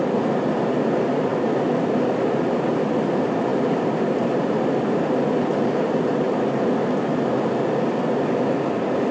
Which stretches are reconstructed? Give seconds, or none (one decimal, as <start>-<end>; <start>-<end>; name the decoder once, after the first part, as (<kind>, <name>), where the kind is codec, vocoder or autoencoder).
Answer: none